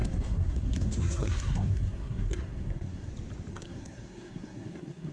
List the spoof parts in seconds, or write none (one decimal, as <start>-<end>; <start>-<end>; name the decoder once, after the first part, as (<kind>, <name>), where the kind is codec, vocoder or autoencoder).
0.0-3.1 (codec, SNAC); 3.5-5.1